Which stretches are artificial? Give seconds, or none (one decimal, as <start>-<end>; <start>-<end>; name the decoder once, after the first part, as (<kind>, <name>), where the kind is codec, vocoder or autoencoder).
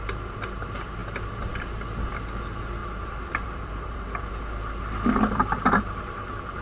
1.0-1.6 (vocoder, BigVGAN v2); 2.8-5.8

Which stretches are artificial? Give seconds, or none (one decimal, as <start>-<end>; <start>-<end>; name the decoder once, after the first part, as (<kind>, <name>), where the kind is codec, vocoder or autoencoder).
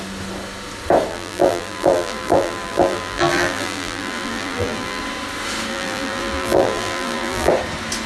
1.1-5.0 (vocoder, BigVGAN v2); 5.7-7.5